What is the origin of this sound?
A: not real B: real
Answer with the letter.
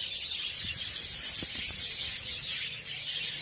B